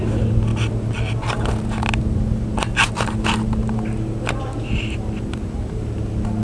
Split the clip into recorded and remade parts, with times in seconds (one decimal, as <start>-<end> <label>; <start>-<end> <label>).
0.0-6.4 recorded